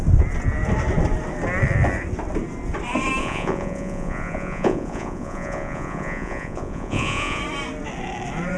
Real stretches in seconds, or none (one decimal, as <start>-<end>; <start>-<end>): 0.0-3.2; 7.4-8.6